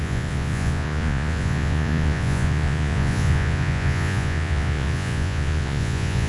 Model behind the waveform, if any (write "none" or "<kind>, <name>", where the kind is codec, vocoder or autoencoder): vocoder, Vocos